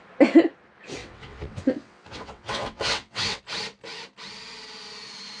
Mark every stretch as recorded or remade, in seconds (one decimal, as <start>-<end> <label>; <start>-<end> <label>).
0.0-1.0 recorded; 1.0-3.4 remade; 3.4-5.4 recorded